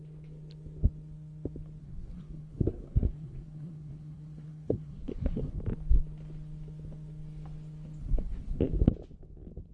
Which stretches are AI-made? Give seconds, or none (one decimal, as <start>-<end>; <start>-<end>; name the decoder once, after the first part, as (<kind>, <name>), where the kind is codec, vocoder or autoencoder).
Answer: 1.8-5.6 (codec, SNAC); 8.0-8.6